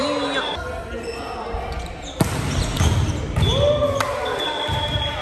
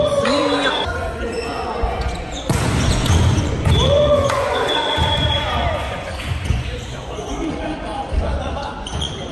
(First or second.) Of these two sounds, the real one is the first